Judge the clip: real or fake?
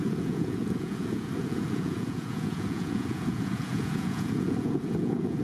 fake